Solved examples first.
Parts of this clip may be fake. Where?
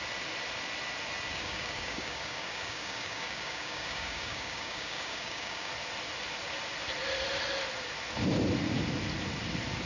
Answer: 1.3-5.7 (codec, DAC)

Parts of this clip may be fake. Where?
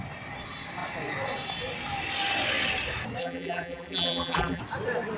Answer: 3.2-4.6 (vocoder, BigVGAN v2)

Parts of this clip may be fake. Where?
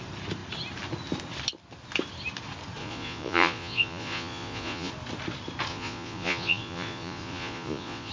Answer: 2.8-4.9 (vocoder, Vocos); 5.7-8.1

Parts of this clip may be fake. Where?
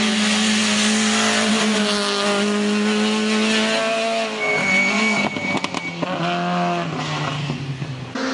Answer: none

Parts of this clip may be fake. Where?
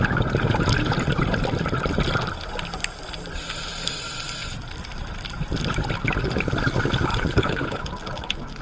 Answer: 7.1-7.8 (codec, HILCodec)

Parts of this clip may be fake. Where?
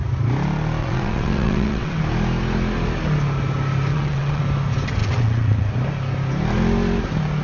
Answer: 0.8-2.0 (vocoder, WaveNeXt); 3.9-4.4; 5.0-5.7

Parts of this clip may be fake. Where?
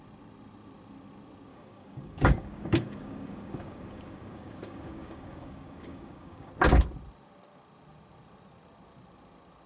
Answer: 1.5-6.5 (codec, DAC)